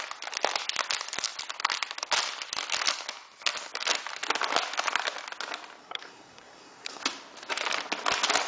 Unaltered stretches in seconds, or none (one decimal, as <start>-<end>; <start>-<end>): 0.0-5.8; 7.0-8.5